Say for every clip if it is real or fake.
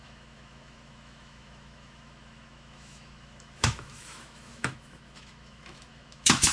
fake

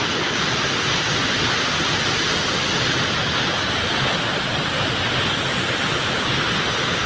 real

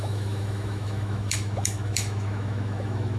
fake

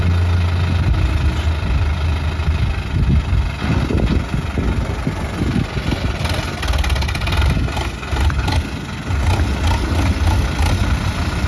real